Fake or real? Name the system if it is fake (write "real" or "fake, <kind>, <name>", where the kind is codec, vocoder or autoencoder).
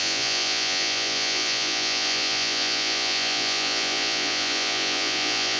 fake, vocoder, Vocos